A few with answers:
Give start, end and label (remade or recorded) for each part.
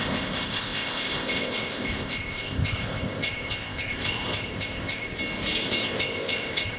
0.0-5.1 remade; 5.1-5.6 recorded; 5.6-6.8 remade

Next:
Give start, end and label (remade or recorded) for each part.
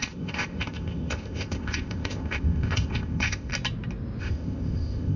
0.0-3.5 remade; 3.5-4.2 recorded; 4.2-5.2 remade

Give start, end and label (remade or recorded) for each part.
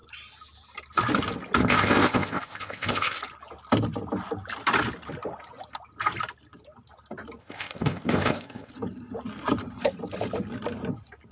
0.0-1.6 recorded; 1.6-3.2 remade; 3.2-7.4 recorded; 7.4-8.7 remade; 8.7-11.3 recorded